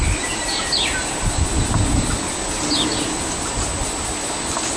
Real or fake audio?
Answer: real